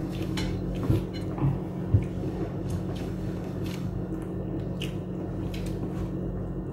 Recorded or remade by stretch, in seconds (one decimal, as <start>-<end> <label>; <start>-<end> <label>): 0.0-0.9 remade; 0.9-2.2 recorded; 2.2-4.1 remade; 4.1-6.7 recorded